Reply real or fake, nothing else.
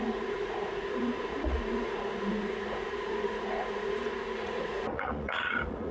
fake